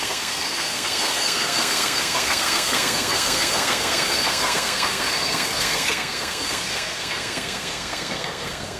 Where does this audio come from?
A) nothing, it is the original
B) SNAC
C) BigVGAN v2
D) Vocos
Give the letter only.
B